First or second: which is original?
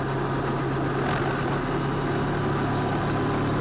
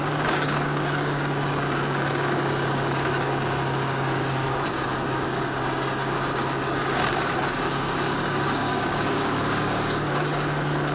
first